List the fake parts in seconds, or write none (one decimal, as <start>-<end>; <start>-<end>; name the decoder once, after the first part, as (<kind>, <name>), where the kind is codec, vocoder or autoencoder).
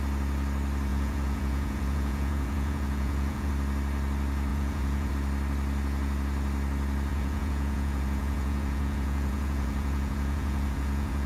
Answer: 0.9-3.5 (vocoder, Vocos); 4.5-5.1; 7.1-11.3